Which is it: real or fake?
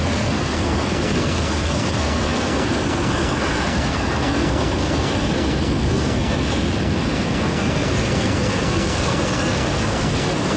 fake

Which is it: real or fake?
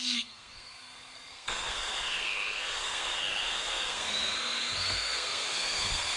fake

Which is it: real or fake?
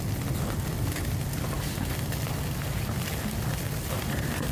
real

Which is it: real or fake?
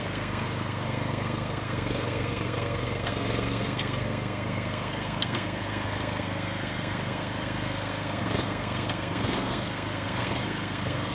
fake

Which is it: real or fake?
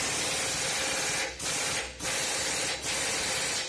real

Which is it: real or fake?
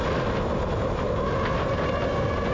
real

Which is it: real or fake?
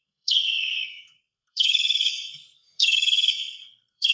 fake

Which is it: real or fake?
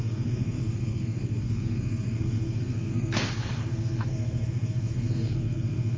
fake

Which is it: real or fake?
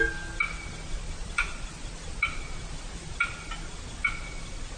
real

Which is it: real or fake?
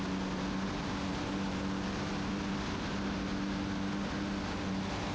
real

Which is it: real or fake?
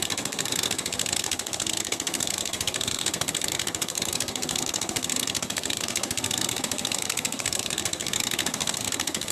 fake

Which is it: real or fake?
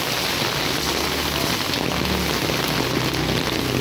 real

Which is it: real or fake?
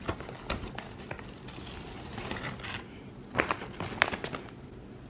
real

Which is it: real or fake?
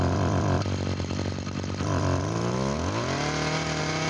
real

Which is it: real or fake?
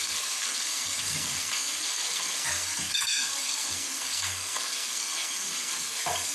fake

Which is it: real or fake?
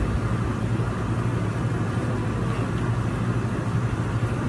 real